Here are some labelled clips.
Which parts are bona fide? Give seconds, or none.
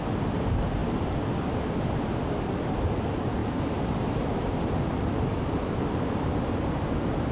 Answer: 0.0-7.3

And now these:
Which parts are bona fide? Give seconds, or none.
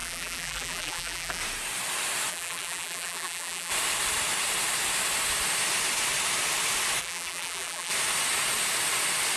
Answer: 1.4-2.3; 3.7-7.0; 7.9-9.4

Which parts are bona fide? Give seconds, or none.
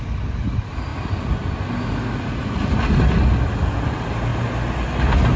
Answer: 0.0-5.4